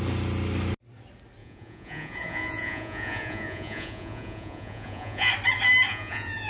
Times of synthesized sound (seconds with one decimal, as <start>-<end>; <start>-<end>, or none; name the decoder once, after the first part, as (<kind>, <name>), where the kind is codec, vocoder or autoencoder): 1.4-5.3 (vocoder, Vocos); 5.9-6.5